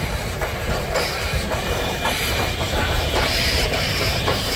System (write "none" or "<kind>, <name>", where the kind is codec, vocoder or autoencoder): vocoder, BigVGAN v2